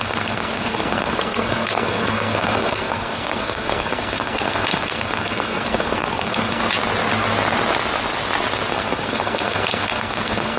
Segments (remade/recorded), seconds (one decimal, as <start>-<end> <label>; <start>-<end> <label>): 0.0-6.6 remade; 6.6-8.7 recorded; 8.7-10.6 remade